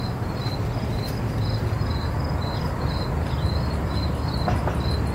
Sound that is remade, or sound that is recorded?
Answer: recorded